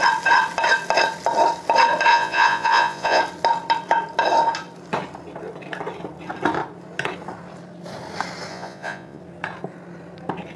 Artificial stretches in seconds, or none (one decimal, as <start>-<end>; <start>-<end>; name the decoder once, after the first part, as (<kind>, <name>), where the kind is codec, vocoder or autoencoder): 2.1-3.2 (vocoder, Vocos); 8.5-9.2